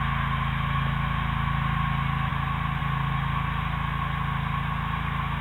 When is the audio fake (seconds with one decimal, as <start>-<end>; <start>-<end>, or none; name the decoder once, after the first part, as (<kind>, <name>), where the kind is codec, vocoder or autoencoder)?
none